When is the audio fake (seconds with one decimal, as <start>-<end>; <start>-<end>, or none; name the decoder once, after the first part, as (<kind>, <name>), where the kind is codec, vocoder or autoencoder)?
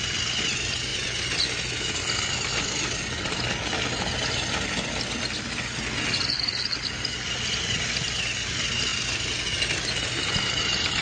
none